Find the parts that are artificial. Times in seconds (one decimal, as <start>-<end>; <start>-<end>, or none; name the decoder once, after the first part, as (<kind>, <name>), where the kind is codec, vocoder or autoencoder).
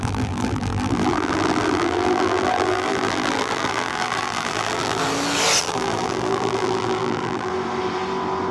0.0-5.0 (vocoder, BigVGAN v2); 5.6-7.5